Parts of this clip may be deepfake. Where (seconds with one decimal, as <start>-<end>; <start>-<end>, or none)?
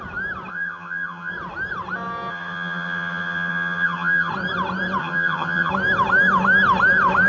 0.5-1.3; 2.3-4.3; 5.0-5.7